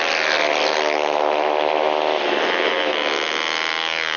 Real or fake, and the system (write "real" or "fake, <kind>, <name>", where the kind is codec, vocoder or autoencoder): real